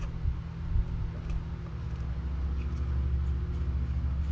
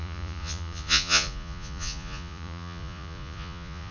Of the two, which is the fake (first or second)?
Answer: second